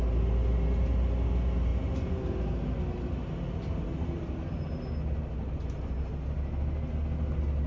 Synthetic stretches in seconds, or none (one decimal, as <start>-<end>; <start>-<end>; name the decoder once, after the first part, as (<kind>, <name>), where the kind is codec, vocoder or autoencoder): none